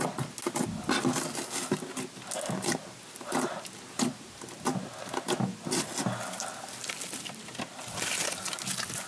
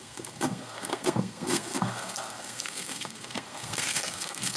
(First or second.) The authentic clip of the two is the first